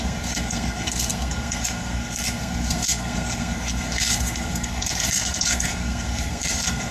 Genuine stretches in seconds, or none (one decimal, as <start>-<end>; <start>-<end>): none